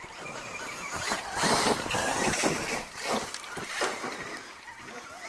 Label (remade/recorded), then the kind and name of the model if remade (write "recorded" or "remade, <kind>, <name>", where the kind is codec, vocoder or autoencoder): recorded